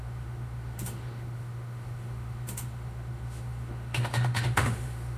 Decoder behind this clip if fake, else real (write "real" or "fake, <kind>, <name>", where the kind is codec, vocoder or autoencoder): fake, autoencoder, DAC-VAE